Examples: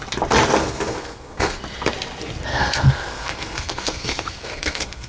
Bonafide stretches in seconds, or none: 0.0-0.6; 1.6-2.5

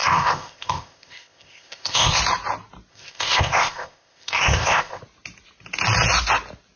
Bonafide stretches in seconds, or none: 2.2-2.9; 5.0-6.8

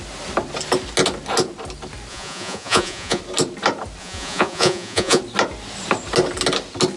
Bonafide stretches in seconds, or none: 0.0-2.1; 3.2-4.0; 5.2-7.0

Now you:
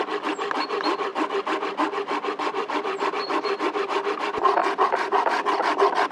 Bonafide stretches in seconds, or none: 0.0-6.1

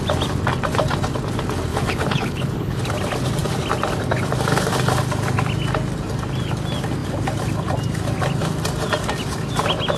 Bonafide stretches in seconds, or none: 0.0-1.7; 2.8-10.0